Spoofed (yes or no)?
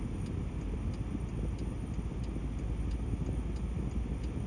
no